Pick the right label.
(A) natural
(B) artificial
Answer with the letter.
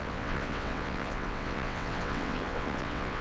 B